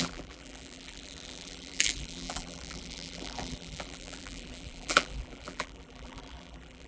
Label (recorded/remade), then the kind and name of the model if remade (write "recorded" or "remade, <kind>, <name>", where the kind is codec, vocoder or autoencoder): remade, vocoder, BigVGAN v2